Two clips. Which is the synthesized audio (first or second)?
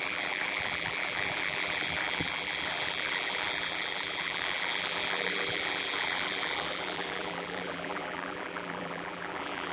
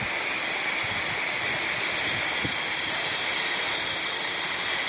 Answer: first